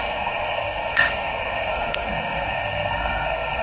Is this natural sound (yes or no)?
no